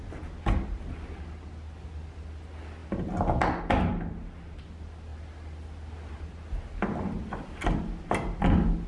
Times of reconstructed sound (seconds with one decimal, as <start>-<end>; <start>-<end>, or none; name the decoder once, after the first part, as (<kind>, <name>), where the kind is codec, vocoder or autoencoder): none